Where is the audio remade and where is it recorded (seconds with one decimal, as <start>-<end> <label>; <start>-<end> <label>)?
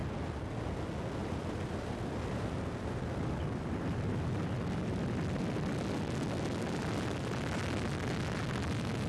0.0-1.2 recorded; 1.2-5.4 remade; 5.4-9.1 recorded